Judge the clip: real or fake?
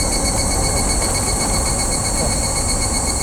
real